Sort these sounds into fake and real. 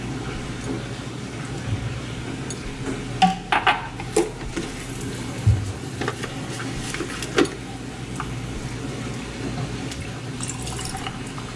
real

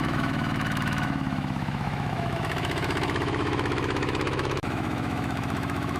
fake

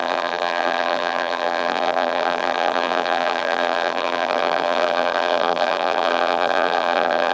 fake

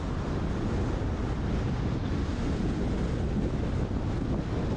real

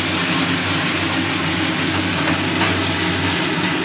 real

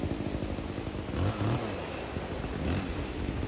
real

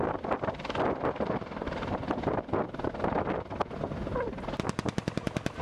real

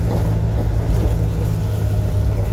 real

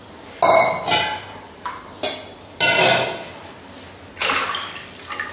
real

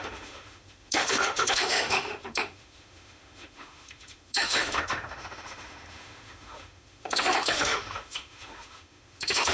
fake